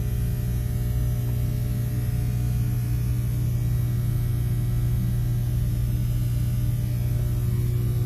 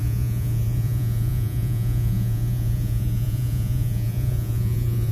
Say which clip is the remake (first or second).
second